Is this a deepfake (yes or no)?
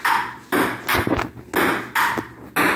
no